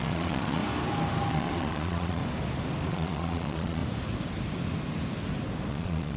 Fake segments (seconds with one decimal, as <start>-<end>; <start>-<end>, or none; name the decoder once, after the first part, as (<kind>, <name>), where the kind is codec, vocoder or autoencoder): 0.0-0.6 (vocoder, Vocos); 1.3-2.2; 2.9-3.8; 5.7-6.2